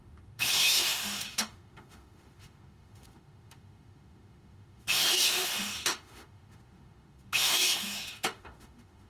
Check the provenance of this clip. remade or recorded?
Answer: remade